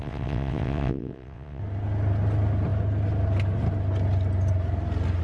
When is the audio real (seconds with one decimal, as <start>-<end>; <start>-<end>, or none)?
1.6-5.2